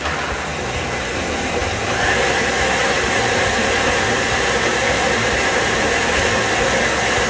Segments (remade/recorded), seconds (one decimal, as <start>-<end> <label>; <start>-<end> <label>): 0.0-0.5 remade; 0.5-1.0 recorded; 1.0-6.4 remade; 6.4-7.3 recorded